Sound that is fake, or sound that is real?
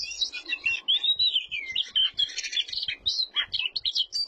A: real